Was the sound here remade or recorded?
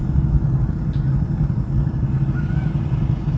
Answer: recorded